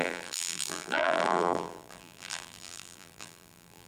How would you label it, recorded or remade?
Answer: remade